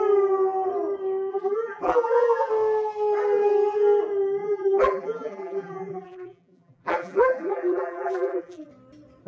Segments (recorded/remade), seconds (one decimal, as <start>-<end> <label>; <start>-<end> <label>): 0.0-1.3 recorded; 1.3-2.5 remade; 2.5-4.4 recorded; 4.4-8.7 remade; 8.7-9.3 recorded